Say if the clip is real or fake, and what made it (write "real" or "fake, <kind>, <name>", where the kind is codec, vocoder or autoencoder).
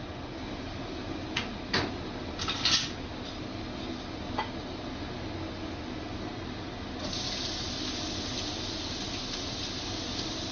real